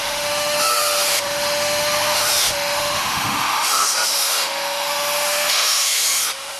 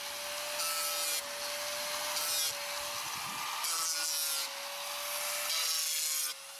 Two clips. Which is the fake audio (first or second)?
first